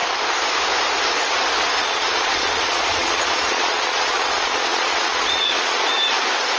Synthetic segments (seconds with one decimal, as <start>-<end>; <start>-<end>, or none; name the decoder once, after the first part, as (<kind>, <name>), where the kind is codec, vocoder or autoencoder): 1.8-5.8 (vocoder, Vocos)

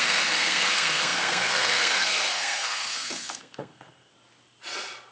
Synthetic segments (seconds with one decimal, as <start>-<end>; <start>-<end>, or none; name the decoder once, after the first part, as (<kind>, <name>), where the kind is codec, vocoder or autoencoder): 0.0-4.1 (codec, SNAC)